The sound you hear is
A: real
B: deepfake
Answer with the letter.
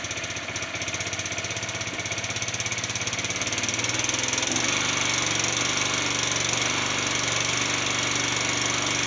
A